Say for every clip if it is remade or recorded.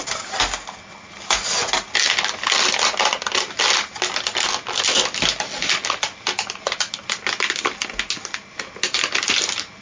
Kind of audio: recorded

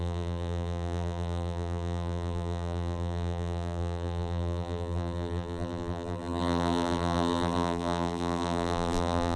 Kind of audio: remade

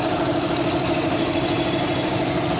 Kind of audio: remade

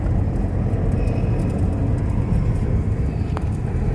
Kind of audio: recorded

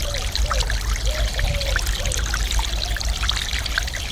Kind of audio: recorded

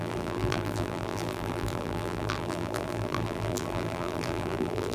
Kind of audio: remade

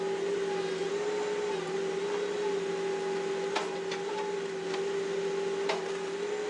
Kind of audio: recorded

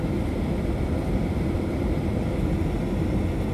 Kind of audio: recorded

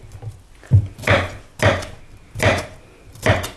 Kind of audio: recorded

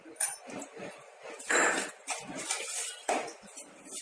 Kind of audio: remade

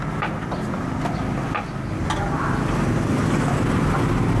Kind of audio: recorded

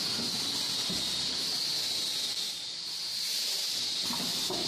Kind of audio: recorded